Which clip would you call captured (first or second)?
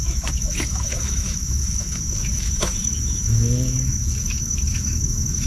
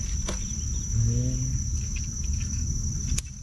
second